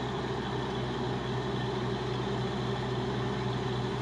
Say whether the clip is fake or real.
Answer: real